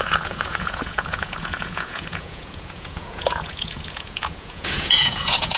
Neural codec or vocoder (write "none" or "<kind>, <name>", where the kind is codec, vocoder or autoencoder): vocoder, Vocos